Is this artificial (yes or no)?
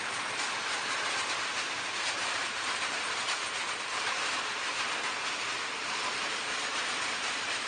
yes